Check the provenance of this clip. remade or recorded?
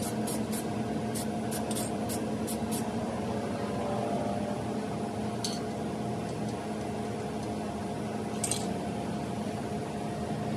recorded